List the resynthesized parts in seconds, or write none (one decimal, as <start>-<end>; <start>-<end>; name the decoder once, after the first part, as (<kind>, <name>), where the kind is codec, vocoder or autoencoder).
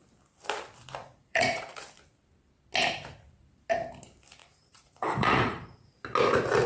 1.0-1.8 (vocoder, Vocos); 4.4-6.0